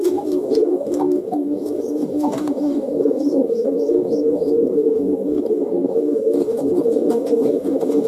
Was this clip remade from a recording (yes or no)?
yes